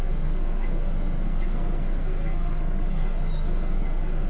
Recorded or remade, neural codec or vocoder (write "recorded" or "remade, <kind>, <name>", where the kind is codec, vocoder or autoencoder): remade, codec, SNAC